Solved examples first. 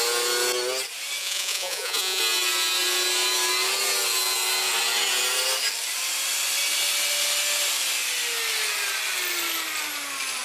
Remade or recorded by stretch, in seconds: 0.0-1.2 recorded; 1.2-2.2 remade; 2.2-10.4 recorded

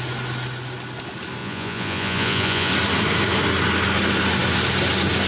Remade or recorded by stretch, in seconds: 0.0-1.4 recorded; 1.4-2.7 remade; 2.7-5.3 recorded

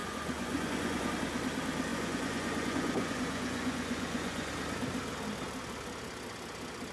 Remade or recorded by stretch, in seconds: 0.0-1.1 remade; 1.1-1.9 recorded; 1.9-4.5 remade; 4.5-6.9 recorded

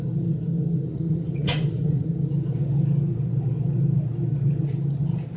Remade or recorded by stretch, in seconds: 0.0-0.9 recorded; 0.9-2.1 remade; 2.1-5.4 recorded

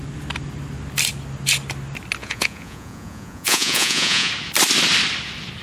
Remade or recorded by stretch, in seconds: 0.0-2.2 recorded; 2.2-4.3 remade; 4.3-5.6 recorded

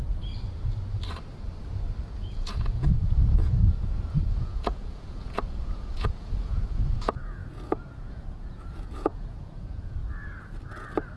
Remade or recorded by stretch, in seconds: 0.0-2.1 recorded; 2.1-10.0 remade; 10.0-11.2 recorded

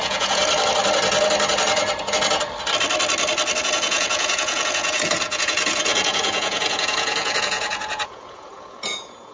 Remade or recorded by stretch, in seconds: 0.0-0.4 remade; 0.4-3.6 recorded; 3.6-9.3 remade